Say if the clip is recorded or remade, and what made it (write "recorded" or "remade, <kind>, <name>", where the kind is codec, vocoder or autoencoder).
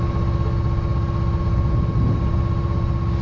recorded